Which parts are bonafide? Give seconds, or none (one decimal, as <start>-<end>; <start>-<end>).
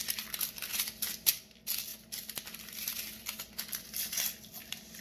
0.0-5.0